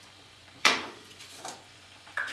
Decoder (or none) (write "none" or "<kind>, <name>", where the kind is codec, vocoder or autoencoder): vocoder, Vocos